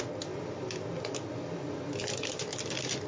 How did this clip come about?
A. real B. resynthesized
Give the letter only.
A